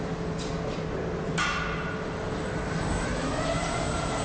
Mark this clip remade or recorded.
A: recorded